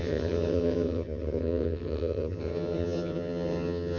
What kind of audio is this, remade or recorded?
remade